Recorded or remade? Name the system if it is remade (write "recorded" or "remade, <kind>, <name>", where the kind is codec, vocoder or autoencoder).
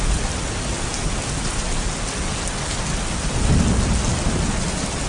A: recorded